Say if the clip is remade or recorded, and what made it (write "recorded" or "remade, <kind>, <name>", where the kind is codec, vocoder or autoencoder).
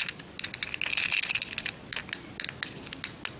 recorded